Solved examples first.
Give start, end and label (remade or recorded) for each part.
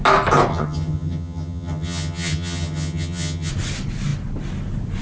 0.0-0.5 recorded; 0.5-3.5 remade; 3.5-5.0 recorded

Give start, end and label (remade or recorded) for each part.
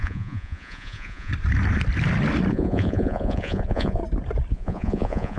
0.0-1.3 remade; 1.3-2.5 recorded; 2.5-4.0 remade; 4.0-4.5 recorded; 4.5-5.4 remade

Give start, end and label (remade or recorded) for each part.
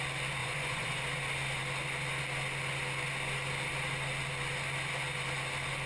0.0-0.4 recorded; 0.4-1.0 remade; 1.0-5.9 recorded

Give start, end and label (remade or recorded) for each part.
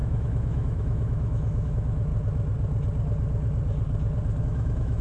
0.0-2.1 remade; 2.1-4.4 recorded; 4.4-5.0 remade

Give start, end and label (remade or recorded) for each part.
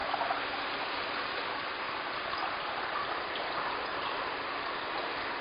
0.0-3.1 remade; 3.1-3.9 recorded; 3.9-4.7 remade; 4.7-5.4 recorded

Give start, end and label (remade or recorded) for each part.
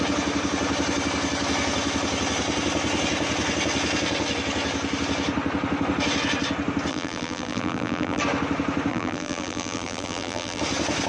0.0-6.9 recorded; 6.9-8.2 remade; 8.2-8.9 recorded; 8.9-10.6 remade; 10.6-11.1 recorded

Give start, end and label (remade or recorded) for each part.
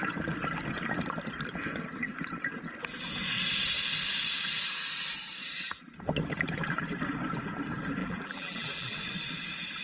0.0-8.0 recorded; 8.0-9.0 remade; 9.0-9.8 recorded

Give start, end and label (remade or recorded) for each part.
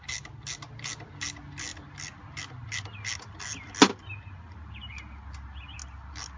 0.0-6.4 recorded